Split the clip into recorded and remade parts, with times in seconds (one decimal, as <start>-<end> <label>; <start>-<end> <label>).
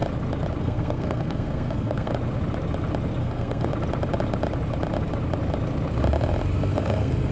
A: 0.0-0.6 recorded; 0.6-2.1 remade; 2.1-3.2 recorded; 3.2-3.7 remade; 3.7-6.7 recorded; 6.7-7.3 remade